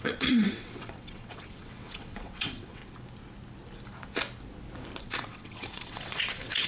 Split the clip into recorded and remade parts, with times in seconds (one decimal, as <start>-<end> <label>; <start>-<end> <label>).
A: 0.0-2.8 remade; 2.8-5.0 recorded; 5.0-6.7 remade